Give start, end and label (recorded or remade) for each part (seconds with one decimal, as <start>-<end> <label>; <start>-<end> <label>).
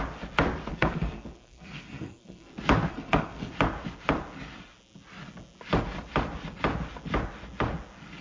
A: 0.0-0.7 recorded; 0.7-2.5 remade; 2.5-2.9 recorded; 2.9-3.5 remade; 3.5-8.2 recorded